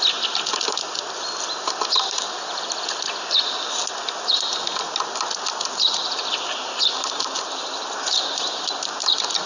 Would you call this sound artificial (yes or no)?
no